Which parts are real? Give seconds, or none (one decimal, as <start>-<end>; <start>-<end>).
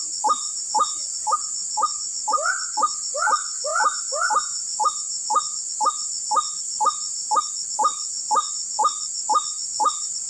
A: 0.0-10.3